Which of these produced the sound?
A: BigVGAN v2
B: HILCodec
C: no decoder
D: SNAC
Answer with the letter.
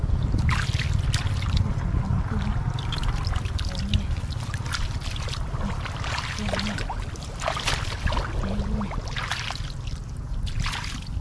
C